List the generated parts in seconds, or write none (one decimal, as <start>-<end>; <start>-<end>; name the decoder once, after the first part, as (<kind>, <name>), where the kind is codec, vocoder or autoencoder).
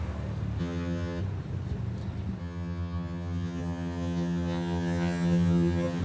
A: 0.6-1.2 (vocoder, HiFi-GAN); 2.4-6.0